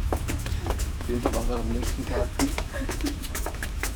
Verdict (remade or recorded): remade